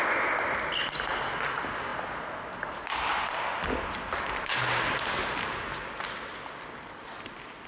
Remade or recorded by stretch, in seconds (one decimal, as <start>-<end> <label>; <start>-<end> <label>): 0.0-7.7 recorded